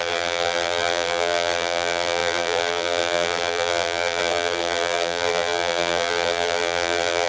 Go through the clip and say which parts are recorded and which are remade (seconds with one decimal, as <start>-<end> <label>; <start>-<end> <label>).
0.0-7.3 remade

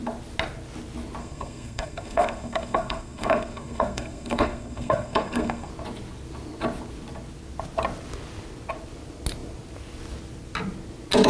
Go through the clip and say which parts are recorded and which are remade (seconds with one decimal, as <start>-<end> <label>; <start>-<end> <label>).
0.0-1.2 recorded; 1.2-5.7 remade; 5.7-11.3 recorded

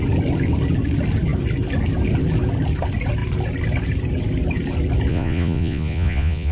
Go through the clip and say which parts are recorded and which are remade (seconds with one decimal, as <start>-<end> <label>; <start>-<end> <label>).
0.0-5.1 recorded; 5.1-6.5 remade

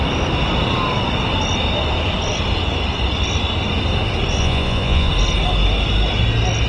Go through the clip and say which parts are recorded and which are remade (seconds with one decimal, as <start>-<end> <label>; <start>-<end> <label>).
0.0-4.4 recorded; 4.4-5.1 remade; 5.1-6.7 recorded

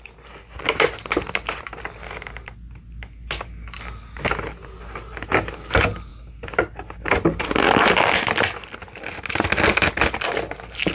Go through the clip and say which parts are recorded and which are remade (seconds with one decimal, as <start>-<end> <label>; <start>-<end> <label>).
0.0-1.0 recorded; 1.0-1.8 remade; 1.8-6.1 recorded; 6.1-7.5 remade; 7.5-10.9 recorded